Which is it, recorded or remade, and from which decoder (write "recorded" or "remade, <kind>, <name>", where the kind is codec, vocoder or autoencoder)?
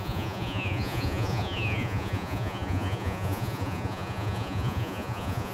remade, vocoder, Vocos